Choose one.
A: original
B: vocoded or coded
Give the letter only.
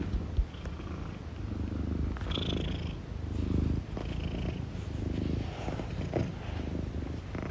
A